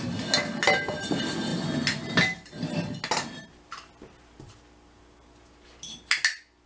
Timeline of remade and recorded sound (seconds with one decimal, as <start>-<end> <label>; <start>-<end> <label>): 0.0-6.7 recorded